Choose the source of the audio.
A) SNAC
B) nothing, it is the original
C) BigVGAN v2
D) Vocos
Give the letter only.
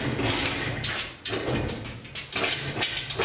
B